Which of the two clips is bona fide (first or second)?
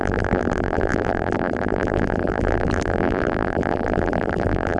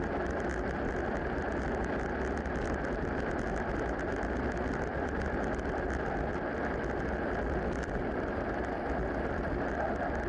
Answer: second